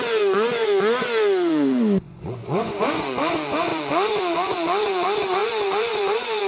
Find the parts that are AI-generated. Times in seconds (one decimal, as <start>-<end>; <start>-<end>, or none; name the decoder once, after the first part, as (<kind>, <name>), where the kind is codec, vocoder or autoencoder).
0.0-6.5 (vocoder, Vocos)